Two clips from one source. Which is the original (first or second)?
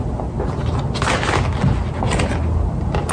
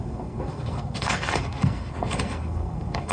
first